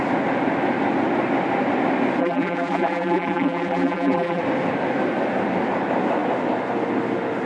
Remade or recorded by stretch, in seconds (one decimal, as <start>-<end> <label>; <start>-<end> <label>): 0.0-2.2 recorded; 2.2-4.4 remade; 4.4-7.5 recorded